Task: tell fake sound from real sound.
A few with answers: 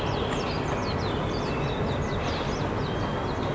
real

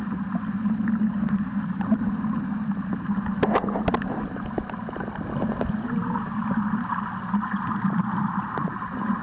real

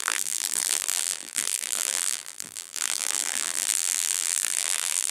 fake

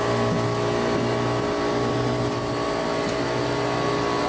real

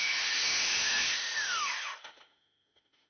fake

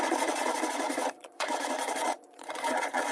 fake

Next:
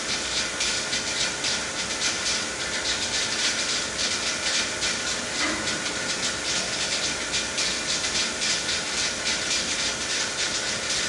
real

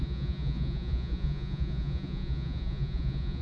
fake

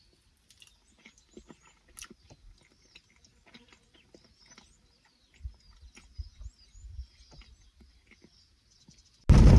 real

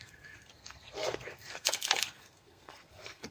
fake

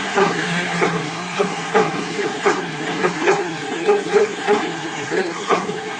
fake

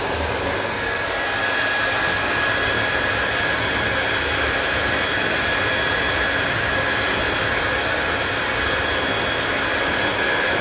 real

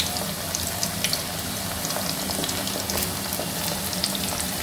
real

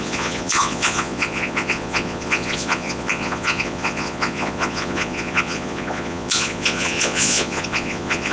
fake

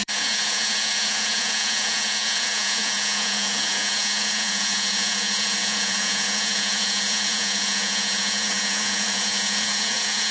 fake